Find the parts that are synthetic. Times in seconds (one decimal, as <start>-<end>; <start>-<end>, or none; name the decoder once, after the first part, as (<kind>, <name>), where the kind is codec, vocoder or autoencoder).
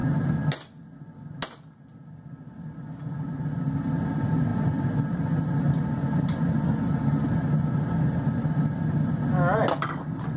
none